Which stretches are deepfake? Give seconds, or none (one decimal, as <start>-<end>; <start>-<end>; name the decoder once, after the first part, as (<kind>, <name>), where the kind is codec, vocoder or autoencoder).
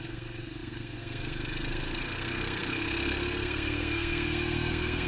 0.0-5.1 (codec, SNAC)